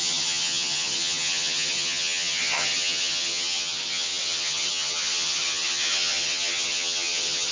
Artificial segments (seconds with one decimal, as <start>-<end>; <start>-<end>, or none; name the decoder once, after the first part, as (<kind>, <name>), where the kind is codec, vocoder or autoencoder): 0.0-7.5 (vocoder, HiFi-GAN)